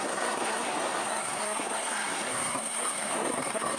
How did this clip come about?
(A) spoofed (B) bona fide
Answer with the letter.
A